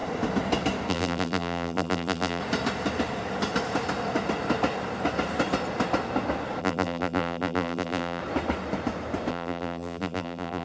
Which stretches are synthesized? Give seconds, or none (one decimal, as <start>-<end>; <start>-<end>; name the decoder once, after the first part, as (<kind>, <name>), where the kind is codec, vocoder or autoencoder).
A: 0.9-2.4 (vocoder, BigVGAN v2); 6.6-8.2; 9.3-10.6